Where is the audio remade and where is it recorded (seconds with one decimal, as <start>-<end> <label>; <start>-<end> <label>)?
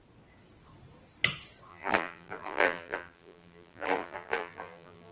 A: 0.0-1.7 recorded; 1.7-5.1 remade